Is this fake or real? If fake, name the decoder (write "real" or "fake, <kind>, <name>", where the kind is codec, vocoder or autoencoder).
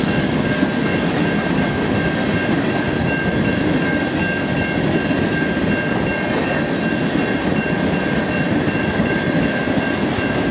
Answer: real